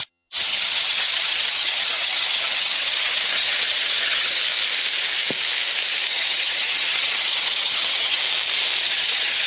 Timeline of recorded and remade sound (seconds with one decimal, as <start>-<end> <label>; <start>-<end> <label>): 0.0-4.4 remade; 4.4-6.1 recorded; 6.1-8.2 remade; 8.2-8.8 recorded; 8.8-9.5 remade